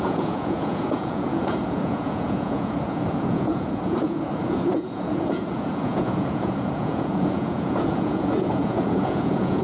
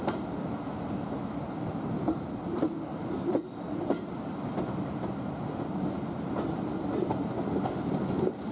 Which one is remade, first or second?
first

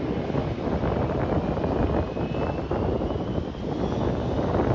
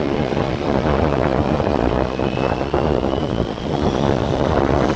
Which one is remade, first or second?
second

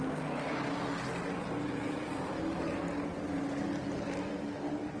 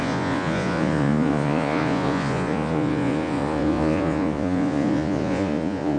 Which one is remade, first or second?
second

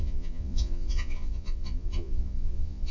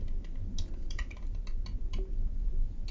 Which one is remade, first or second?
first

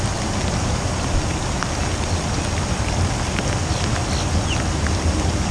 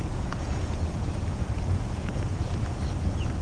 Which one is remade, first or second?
second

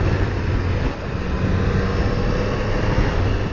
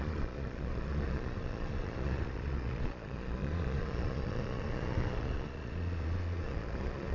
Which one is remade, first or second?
second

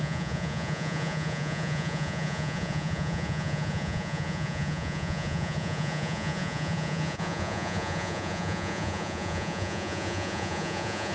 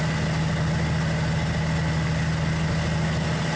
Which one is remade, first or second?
first